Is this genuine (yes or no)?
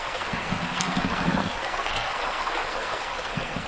no